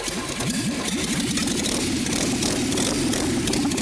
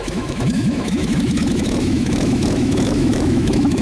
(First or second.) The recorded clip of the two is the first